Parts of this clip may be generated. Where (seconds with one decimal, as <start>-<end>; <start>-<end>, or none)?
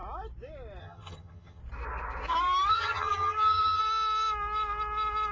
0.8-1.6; 2.7-3.8